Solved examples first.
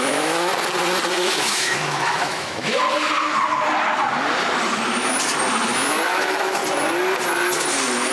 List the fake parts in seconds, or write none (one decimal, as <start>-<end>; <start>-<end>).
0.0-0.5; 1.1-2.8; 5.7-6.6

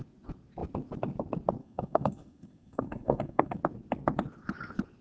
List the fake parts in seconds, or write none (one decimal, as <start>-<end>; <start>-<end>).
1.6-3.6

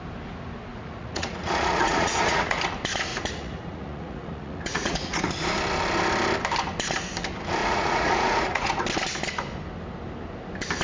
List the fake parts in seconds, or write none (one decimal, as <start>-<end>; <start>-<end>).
0.7-2.6; 3.1-5.2; 7.6-8.8

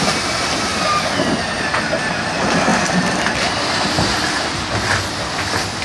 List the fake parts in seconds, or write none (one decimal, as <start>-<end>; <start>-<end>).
none

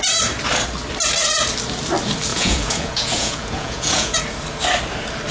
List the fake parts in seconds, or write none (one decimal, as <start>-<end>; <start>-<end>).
2.3-4.2

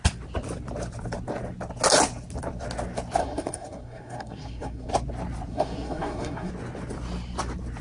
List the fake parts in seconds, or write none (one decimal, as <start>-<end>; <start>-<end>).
3.2-4.9; 5.5-6.5

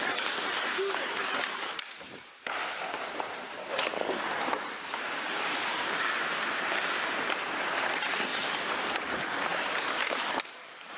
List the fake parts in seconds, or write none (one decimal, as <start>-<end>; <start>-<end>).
0.0-11.0